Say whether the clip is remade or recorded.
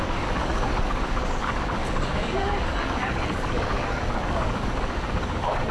remade